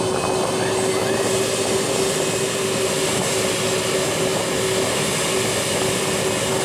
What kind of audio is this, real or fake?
real